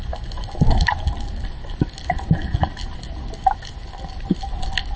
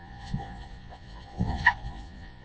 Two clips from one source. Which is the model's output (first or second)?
second